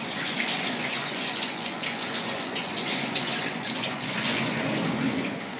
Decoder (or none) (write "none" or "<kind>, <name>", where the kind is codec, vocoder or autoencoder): vocoder, Vocos